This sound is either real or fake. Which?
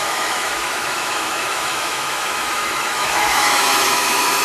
fake